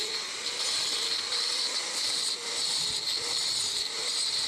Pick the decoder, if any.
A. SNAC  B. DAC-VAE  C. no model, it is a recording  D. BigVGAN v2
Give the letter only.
D